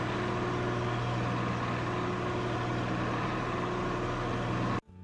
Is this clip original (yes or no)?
yes